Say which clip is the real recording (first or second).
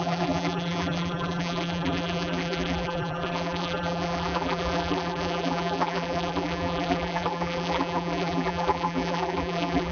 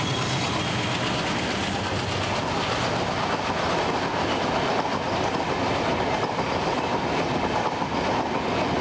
second